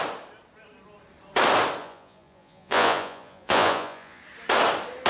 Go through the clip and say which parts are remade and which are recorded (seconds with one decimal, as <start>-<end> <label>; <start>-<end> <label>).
0.0-1.8 recorded; 1.8-4.2 remade; 4.2-5.1 recorded